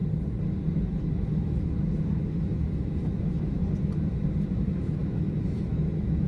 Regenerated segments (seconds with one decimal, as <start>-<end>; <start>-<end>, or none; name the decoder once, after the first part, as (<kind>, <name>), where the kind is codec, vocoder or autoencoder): 0.7-3.6 (autoencoder, DAC-VAE); 4.5-6.3